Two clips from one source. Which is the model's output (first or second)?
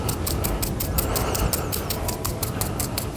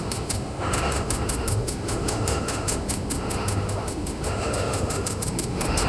second